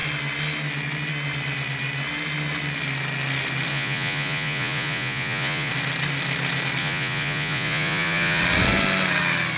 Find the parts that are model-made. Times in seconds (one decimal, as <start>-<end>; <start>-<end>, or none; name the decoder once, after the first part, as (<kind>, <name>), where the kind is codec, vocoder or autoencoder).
3.7-5.7 (vocoder, Vocos); 6.8-8.4